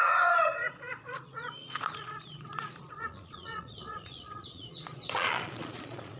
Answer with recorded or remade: remade